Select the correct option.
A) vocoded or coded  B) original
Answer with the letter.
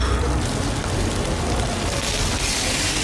B